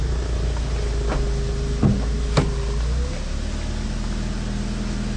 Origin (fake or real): real